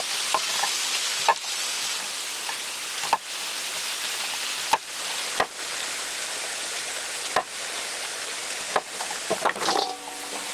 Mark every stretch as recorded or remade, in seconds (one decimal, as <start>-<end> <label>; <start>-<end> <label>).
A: 0.0-10.5 recorded